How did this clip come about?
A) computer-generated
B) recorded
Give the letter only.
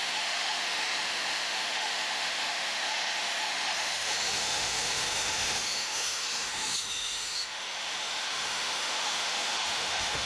A